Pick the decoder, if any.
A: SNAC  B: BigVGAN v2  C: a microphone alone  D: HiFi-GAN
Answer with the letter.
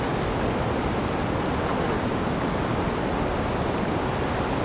C